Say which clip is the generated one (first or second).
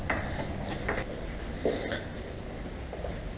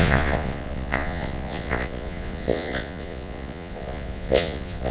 second